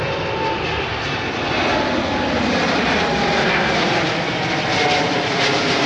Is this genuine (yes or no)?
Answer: yes